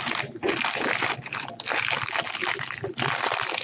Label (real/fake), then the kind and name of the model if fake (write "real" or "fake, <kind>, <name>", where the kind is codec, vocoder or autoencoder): real